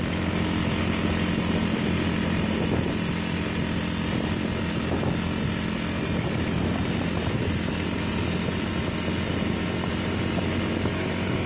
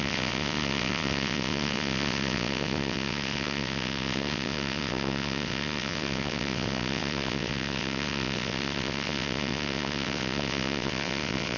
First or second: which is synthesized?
second